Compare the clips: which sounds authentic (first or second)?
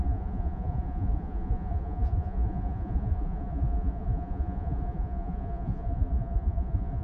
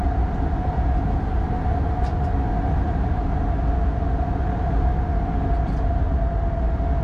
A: second